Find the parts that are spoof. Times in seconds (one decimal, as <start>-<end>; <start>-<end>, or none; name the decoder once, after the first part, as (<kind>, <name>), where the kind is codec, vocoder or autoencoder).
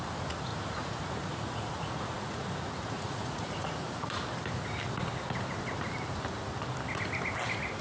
0.5-4.2 (vocoder, Vocos)